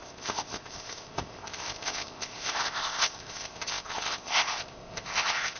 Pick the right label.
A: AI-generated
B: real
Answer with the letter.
A